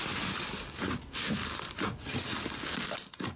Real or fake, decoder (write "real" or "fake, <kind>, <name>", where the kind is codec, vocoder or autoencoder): real